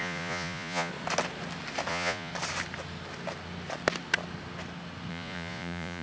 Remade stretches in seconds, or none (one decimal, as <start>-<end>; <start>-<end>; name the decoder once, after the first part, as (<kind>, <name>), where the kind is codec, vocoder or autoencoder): 0.0-0.9 (vocoder, Vocos); 1.9-2.3; 5.1-6.0